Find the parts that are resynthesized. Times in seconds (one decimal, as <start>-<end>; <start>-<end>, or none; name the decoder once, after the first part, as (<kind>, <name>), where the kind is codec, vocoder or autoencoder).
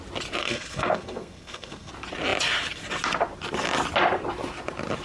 0.4-1.9 (codec, SNAC)